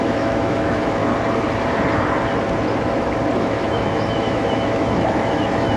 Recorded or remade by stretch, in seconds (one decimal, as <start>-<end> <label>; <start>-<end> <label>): 0.0-1.0 remade; 1.0-3.4 recorded; 3.4-5.8 remade